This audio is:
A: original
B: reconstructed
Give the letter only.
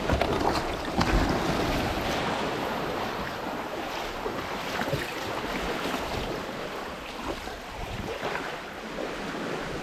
A